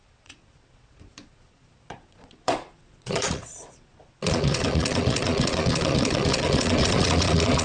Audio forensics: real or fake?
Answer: fake